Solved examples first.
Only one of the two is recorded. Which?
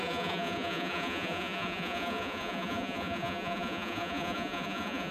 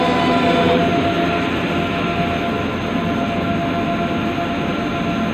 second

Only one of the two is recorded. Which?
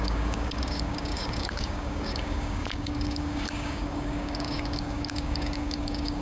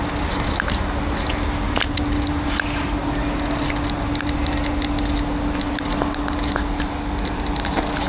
second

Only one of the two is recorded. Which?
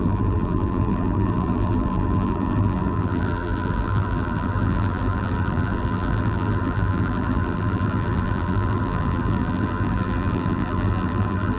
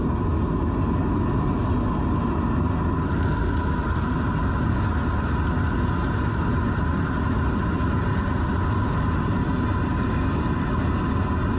second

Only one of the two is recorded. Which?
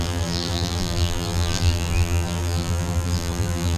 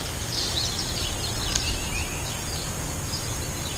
second